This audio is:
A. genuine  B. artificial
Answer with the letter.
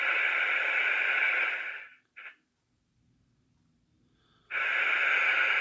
A